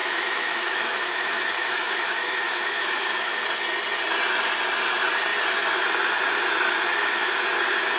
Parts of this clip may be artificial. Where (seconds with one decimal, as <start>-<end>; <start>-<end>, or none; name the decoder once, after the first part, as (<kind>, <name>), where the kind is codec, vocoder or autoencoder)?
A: 0.0-3.4 (autoencoder, DAC-VAE)

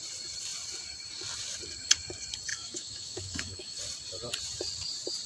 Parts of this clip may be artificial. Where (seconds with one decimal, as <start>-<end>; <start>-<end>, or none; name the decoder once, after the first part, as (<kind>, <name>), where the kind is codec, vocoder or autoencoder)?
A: 2.5-3.8 (autoencoder, DAC-VAE)